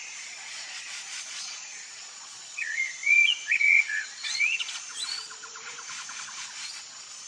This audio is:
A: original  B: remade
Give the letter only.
B